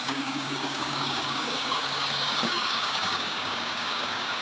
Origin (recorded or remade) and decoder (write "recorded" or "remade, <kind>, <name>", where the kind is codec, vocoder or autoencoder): remade, codec, DAC